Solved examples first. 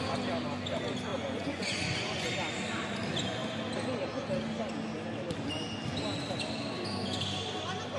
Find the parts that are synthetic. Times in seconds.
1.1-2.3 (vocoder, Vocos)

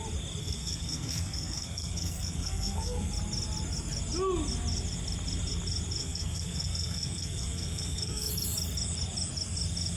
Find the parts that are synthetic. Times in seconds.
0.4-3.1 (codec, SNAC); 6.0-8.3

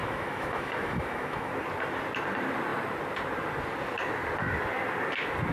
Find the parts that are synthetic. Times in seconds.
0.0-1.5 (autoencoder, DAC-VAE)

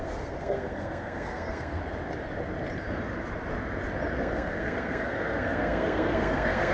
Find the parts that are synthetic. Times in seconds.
0.0-1.8 (codec, SNAC); 4.1-6.7

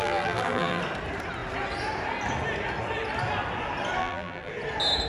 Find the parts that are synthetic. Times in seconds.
0.0-0.8 (vocoder, BigVGAN v2); 4.0-4.5